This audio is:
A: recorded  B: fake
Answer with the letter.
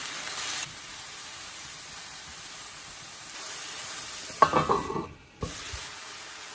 A